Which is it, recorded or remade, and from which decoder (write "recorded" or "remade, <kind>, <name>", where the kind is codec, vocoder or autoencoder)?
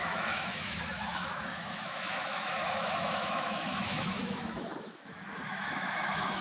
remade, autoencoder, DAC-VAE